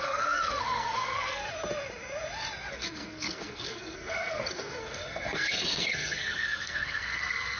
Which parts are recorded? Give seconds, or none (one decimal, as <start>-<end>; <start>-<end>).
1.4-2.7